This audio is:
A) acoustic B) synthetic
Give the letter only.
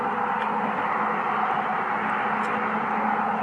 A